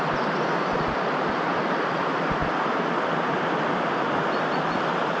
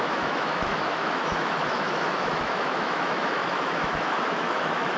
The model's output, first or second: second